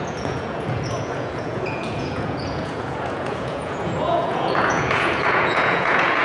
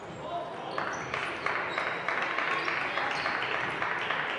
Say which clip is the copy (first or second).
first